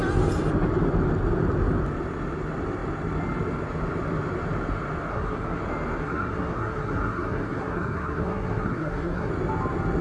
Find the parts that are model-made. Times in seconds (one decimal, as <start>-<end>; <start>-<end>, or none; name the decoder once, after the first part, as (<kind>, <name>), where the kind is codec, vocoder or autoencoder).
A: 5.1-5.6 (codec, SNAC); 6.0-9.3